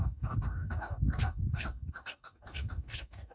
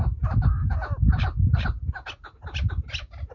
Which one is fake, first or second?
first